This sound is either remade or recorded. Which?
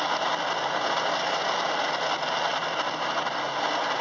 recorded